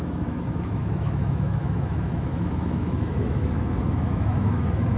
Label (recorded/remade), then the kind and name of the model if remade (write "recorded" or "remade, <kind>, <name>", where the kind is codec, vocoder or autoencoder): remade, autoencoder, DAC-VAE